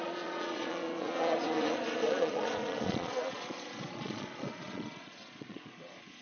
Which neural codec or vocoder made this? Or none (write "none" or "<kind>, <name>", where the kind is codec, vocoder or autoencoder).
vocoder, Vocos